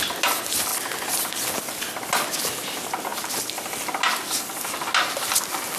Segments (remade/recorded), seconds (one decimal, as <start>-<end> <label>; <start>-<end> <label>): 0.0-5.8 recorded